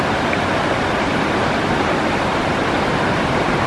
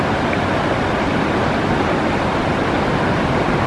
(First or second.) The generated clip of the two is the first